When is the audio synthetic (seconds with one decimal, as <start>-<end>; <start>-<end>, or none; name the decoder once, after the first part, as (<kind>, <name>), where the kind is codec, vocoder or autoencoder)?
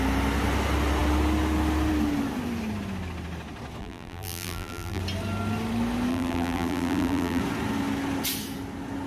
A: 3.8-5.0 (vocoder, BigVGAN v2); 6.1-7.4